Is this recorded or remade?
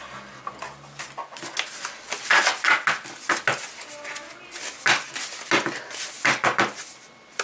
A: recorded